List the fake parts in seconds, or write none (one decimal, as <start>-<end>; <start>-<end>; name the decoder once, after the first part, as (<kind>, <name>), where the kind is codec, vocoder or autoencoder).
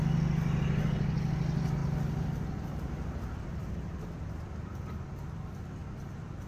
1.8-4.3 (vocoder, BigVGAN v2)